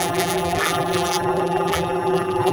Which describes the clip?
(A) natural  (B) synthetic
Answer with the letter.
B